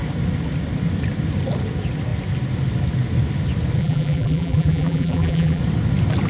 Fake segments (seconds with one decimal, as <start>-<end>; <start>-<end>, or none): 3.8-5.6